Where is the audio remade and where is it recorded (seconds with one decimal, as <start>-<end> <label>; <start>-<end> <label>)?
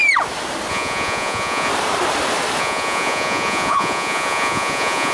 0.0-0.7 recorded; 0.7-1.7 remade; 1.7-2.6 recorded; 2.6-5.1 remade